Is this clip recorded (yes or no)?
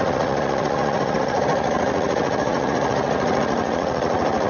no